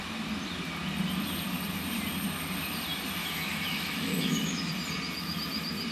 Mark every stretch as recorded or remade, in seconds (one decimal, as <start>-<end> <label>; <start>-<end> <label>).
0.0-3.2 recorded; 3.2-4.7 remade; 4.7-5.9 recorded